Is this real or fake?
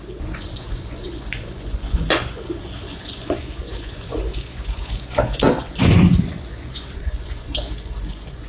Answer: fake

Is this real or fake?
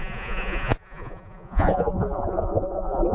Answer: fake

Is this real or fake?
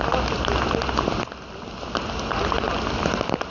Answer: real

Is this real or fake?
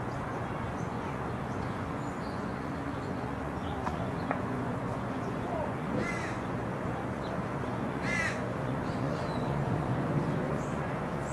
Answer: fake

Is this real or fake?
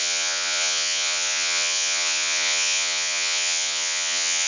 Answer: fake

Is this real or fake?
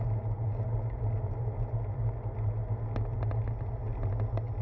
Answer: real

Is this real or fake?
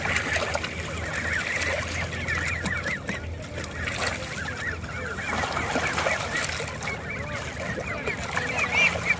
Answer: real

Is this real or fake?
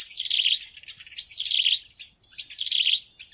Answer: real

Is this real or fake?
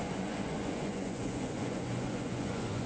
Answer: fake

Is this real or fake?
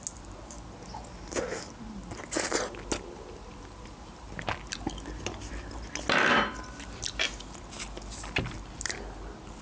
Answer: real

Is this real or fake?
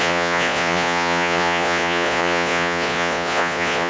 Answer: fake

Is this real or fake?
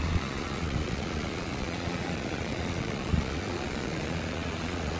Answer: fake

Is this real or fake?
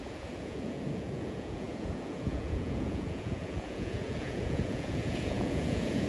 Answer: fake